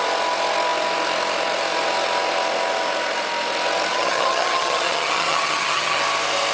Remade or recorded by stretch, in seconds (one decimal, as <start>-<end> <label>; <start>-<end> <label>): 0.0-3.9 recorded; 3.9-6.0 remade; 6.0-6.5 recorded